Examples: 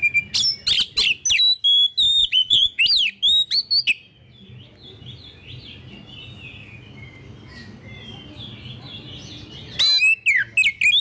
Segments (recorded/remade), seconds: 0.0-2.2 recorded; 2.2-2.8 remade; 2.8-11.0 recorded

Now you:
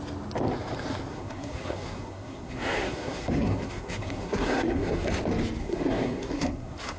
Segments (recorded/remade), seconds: 0.0-1.1 recorded; 1.1-5.1 remade; 5.1-5.6 recorded; 5.6-7.0 remade

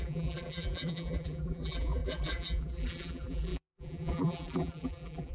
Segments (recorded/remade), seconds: 0.0-5.3 remade

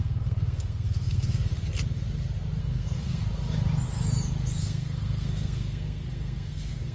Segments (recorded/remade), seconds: 0.0-1.5 remade; 1.5-2.6 recorded; 2.6-3.2 remade; 3.2-4.6 recorded; 4.6-6.9 remade

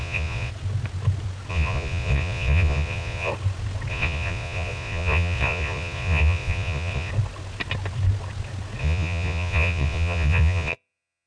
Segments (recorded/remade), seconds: 0.0-0.5 remade; 0.5-1.5 recorded; 1.5-3.3 remade; 3.3-3.9 recorded; 3.9-7.1 remade; 7.1-8.8 recorded; 8.8-11.3 remade

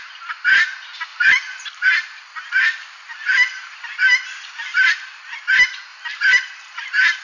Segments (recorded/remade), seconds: 0.0-1.1 recorded; 1.1-2.2 remade; 2.2-3.1 recorded; 3.1-5.5 remade; 5.5-5.9 recorded; 5.9-7.2 remade

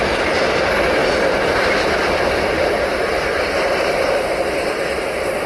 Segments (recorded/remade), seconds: 0.0-1.0 recorded; 1.0-4.3 remade; 4.3-5.5 recorded